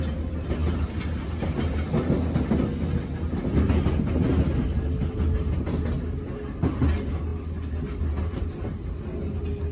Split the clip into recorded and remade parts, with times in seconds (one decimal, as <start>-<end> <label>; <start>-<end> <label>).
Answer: 0.0-9.7 recorded